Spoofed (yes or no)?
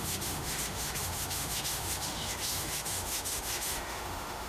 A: yes